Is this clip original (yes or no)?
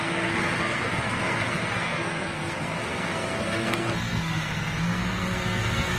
no